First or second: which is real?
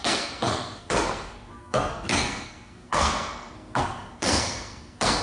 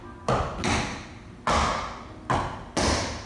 second